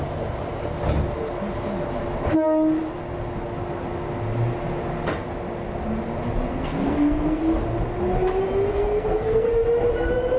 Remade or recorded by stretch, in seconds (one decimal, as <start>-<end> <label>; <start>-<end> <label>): 0.0-6.5 recorded; 6.5-7.4 remade; 7.4-8.7 recorded; 8.7-9.5 remade; 9.5-10.4 recorded